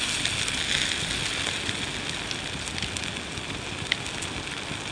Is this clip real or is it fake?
real